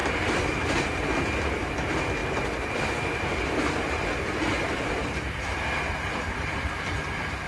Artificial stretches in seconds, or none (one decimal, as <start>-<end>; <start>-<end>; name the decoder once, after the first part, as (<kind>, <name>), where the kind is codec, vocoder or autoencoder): 0.0-1.1 (vocoder, BigVGAN v2); 2.2-6.7